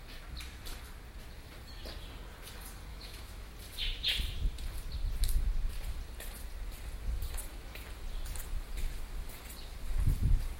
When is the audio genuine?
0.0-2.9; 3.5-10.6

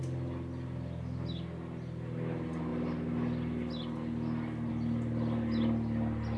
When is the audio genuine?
0.0-6.4